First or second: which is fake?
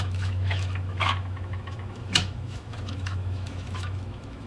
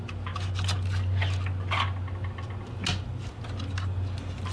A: first